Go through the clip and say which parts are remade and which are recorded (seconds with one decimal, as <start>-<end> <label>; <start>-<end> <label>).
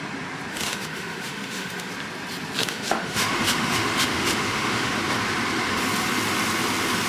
0.0-0.5 recorded; 0.5-1.9 remade; 1.9-2.6 recorded; 2.6-4.9 remade; 4.9-7.1 recorded